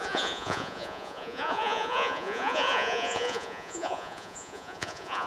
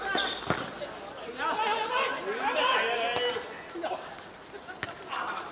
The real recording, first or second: second